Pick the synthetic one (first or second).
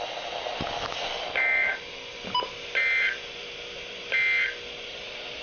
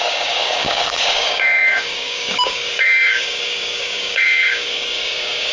second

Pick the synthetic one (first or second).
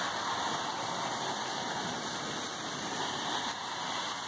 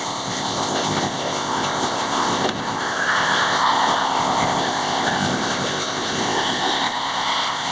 second